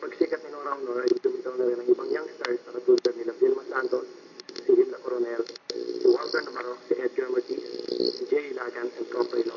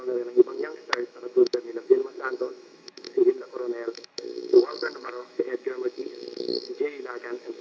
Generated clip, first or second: second